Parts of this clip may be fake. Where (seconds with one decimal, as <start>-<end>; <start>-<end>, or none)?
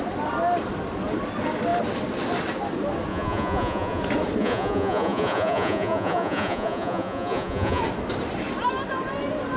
3.1-4.0; 4.4-7.8